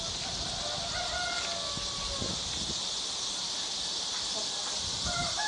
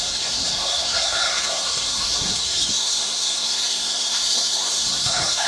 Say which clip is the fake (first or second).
second